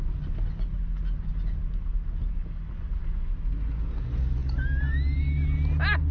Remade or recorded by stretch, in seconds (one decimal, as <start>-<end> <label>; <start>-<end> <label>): 0.0-6.1 recorded